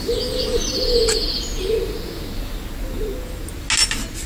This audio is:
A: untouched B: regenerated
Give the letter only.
A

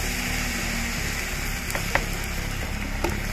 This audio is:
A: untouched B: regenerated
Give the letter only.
A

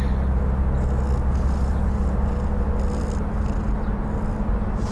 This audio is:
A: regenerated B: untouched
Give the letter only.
B